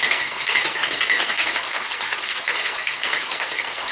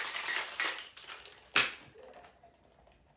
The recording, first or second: second